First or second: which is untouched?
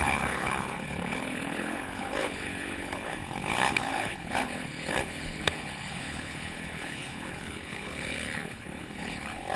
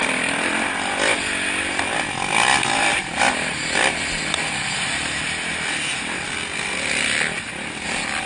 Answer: second